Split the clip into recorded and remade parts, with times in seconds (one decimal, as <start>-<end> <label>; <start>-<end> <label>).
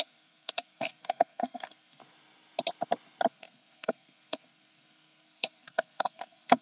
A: 0.0-2.0 remade; 2.0-3.3 recorded; 3.3-6.6 remade